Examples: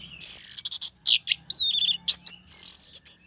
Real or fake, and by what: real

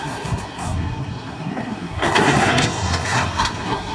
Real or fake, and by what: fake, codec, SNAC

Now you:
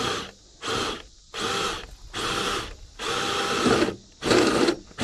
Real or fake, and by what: real